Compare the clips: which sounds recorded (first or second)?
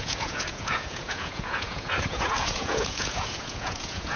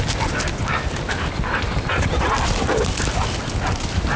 second